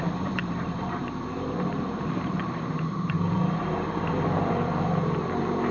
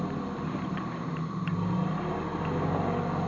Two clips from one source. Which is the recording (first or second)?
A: second